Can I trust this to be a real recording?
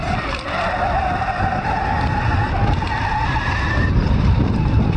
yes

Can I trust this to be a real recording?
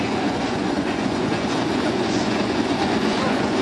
no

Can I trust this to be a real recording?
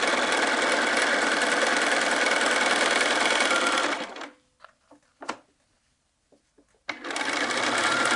yes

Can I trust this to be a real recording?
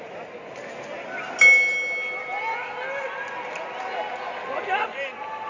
yes